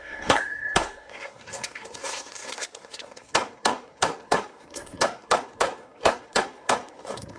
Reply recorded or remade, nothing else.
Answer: remade